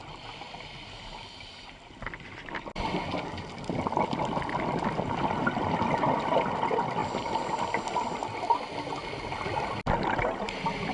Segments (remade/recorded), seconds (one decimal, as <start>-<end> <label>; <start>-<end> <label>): 0.0-10.9 recorded